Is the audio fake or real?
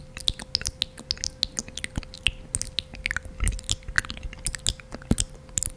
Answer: real